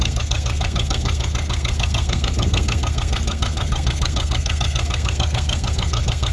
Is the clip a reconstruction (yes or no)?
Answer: yes